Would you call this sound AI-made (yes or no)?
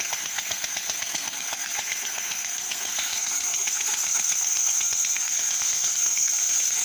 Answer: yes